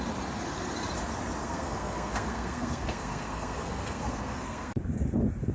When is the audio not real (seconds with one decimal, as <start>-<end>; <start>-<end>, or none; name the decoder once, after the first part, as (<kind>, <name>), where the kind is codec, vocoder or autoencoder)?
1.4-4.7 (codec, SNAC)